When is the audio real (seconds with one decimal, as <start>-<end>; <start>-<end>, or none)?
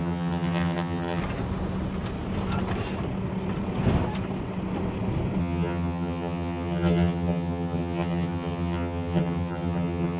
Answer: 1.2-5.4